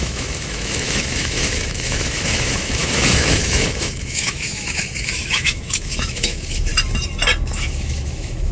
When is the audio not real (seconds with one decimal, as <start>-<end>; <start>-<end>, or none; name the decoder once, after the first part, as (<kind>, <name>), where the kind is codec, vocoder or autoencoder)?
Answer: 0.0-6.7 (autoencoder, DAC-VAE); 7.4-8.5